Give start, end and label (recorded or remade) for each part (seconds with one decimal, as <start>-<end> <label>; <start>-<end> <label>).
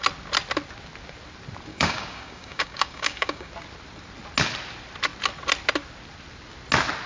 0.0-1.7 recorded; 1.7-3.5 remade; 3.5-7.1 recorded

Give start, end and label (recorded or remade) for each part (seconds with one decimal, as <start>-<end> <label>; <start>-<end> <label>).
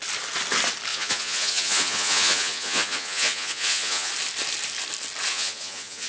0.0-0.9 recorded; 0.9-4.1 remade; 4.1-5.3 recorded; 5.3-6.1 remade